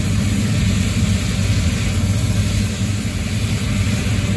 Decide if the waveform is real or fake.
real